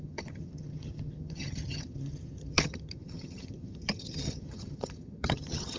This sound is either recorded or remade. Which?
remade